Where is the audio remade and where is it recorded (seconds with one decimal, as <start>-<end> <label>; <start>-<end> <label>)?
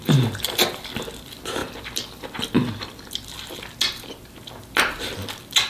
0.0-5.7 recorded